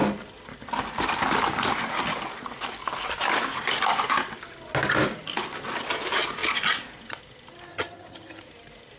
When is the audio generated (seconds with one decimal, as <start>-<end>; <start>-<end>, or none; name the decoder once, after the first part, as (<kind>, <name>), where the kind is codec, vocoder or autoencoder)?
7.7-8.4 (vocoder, HiFi-GAN)